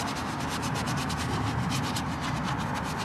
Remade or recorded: recorded